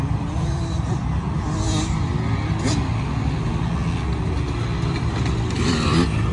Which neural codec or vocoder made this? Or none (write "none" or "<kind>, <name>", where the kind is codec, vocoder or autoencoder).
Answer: none